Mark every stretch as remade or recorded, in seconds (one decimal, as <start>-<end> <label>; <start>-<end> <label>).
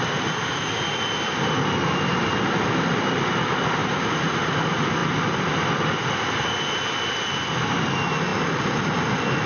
0.0-3.8 recorded; 3.8-4.3 remade; 4.3-9.5 recorded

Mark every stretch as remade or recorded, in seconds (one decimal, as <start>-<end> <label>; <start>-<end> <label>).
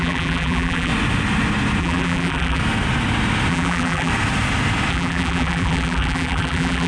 0.0-0.9 remade; 0.9-1.8 recorded; 1.8-2.6 remade; 2.6-3.5 recorded; 3.5-4.1 remade; 4.1-4.9 recorded; 4.9-6.9 remade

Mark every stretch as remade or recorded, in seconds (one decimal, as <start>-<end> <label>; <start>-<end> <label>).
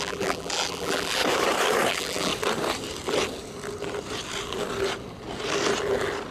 0.0-1.2 remade; 1.2-1.9 recorded; 1.9-2.3 remade; 2.3-6.3 recorded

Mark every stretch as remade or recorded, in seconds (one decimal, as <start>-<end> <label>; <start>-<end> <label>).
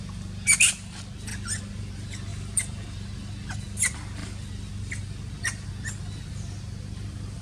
0.0-1.3 recorded; 1.3-1.9 remade; 1.9-2.3 recorded; 2.3-3.5 remade; 3.5-4.2 recorded; 4.2-5.7 remade; 5.7-7.4 recorded